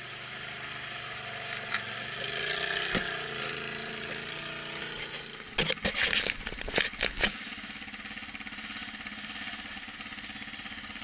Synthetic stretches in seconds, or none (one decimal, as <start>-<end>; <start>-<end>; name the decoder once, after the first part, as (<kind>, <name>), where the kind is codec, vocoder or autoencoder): none